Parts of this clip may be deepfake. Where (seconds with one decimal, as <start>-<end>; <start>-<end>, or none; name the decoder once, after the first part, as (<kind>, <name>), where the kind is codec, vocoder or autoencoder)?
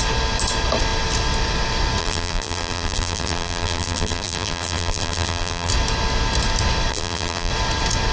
2.0-5.7 (vocoder, BigVGAN v2); 6.9-7.5